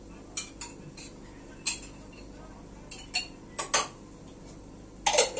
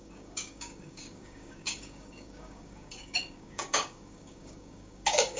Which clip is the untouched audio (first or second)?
first